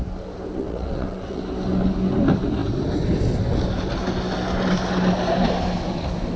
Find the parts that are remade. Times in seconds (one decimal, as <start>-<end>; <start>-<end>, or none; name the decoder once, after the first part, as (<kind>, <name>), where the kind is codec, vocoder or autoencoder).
0.6-1.4 (vocoder, WaveNeXt)